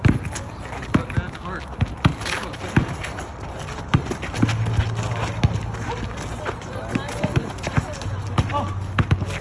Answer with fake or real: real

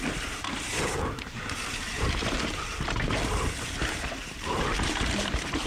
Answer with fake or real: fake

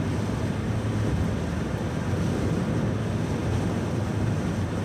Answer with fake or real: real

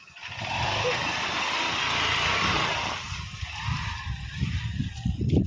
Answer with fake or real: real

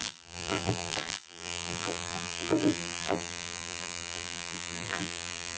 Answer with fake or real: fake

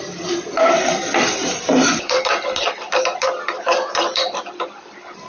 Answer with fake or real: fake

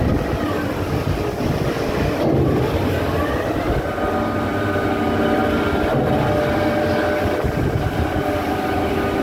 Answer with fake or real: real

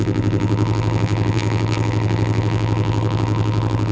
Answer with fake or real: fake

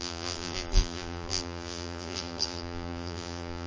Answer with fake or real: fake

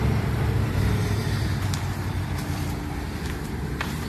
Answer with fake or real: fake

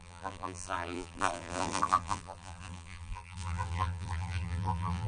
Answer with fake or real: fake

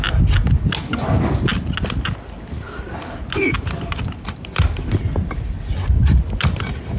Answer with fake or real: real